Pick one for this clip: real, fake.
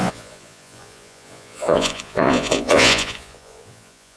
fake